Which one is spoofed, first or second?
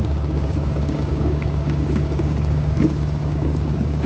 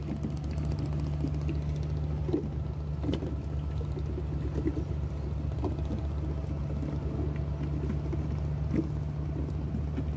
first